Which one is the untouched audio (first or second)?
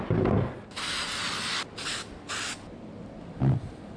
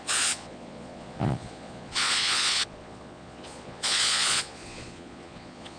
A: first